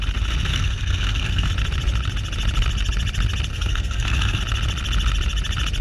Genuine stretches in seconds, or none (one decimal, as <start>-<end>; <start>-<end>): 0.0-0.5; 1.5-3.5; 4.4-5.8